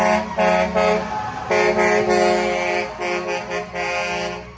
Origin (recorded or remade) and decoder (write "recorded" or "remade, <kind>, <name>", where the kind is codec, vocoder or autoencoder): recorded